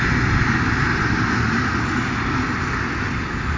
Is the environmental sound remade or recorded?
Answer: recorded